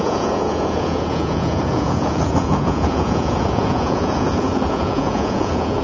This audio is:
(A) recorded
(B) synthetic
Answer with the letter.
B